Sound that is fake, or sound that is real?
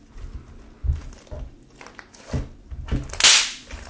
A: real